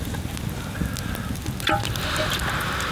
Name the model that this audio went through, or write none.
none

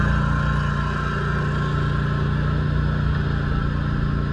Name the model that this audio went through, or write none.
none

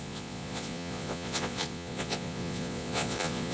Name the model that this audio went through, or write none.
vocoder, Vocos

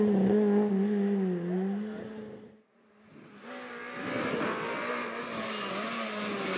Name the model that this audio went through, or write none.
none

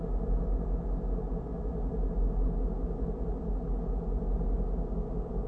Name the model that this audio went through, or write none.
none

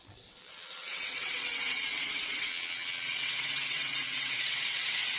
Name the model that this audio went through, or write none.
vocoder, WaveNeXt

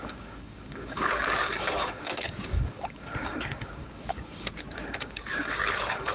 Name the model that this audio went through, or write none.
codec, DAC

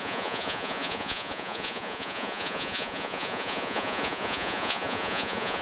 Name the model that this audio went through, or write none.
vocoder, Vocos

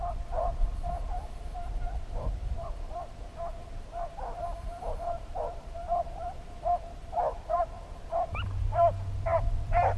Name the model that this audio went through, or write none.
vocoder, BigVGAN v2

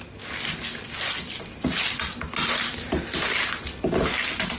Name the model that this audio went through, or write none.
none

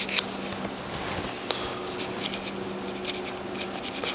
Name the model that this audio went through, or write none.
none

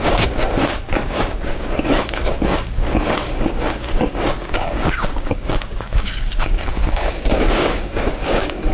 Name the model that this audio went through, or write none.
codec, DAC